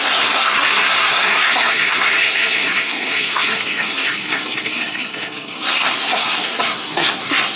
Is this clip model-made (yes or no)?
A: yes